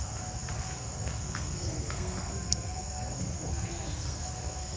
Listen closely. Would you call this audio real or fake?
fake